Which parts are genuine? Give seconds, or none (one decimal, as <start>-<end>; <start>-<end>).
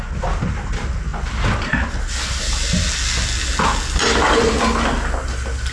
0.0-5.7